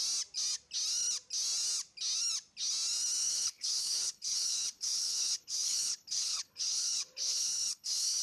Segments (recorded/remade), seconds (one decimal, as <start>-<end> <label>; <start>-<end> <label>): 0.0-3.2 recorded; 3.2-8.2 remade